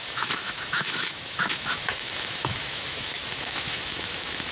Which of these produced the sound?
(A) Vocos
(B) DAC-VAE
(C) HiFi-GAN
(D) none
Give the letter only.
B